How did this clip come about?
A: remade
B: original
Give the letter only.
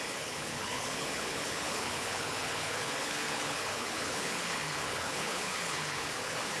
A